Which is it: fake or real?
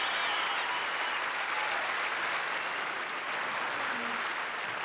real